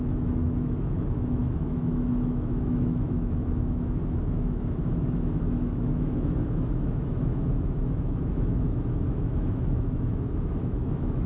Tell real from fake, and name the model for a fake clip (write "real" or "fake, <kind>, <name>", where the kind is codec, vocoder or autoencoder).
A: fake, autoencoder, DAC-VAE